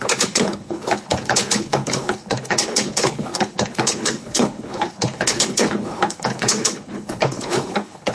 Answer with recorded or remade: remade